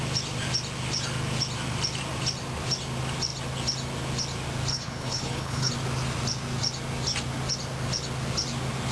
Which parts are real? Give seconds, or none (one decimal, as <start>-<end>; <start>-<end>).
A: 0.0-4.7; 5.7-8.9